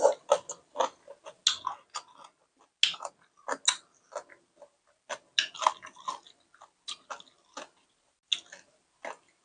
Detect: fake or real real